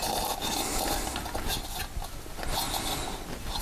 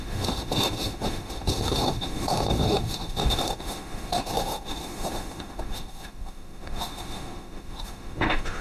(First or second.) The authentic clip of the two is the first